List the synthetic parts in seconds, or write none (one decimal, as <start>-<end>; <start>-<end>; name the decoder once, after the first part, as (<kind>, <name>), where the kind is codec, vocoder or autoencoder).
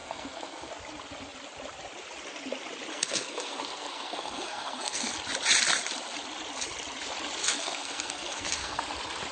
0.0-0.7 (codec, SNAC); 2.9-5.1; 7.4-8.8